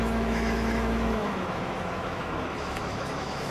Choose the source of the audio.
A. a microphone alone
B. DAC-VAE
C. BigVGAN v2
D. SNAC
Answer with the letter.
B